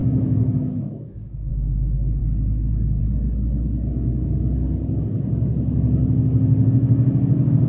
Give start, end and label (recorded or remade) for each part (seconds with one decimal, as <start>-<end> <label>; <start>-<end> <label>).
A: 0.0-1.5 remade; 1.5-7.7 recorded